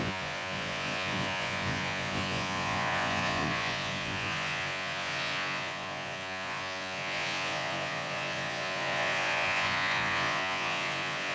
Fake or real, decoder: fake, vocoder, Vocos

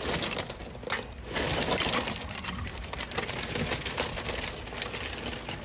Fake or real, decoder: real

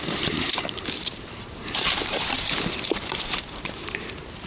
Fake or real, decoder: fake, vocoder, BigVGAN v2